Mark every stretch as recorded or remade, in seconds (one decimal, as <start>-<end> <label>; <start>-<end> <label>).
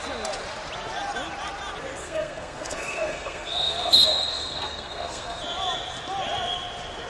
0.0-2.0 recorded; 2.0-5.4 remade; 5.4-7.1 recorded